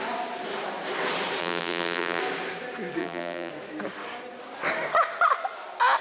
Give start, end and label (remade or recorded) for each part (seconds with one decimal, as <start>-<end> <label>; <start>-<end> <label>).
0.0-1.4 recorded; 1.4-2.2 remade; 2.2-3.0 recorded; 3.0-3.5 remade; 3.5-6.0 recorded